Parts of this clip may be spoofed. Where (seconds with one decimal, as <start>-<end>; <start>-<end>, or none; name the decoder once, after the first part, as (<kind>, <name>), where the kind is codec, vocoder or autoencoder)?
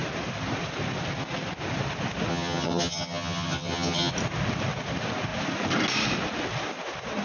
2.3-4.1 (vocoder, HiFi-GAN)